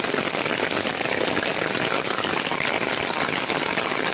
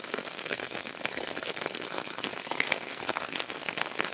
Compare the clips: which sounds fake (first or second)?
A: second